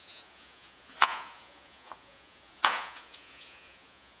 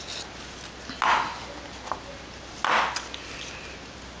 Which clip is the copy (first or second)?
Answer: first